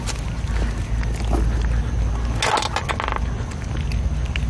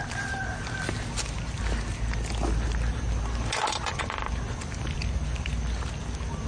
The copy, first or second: second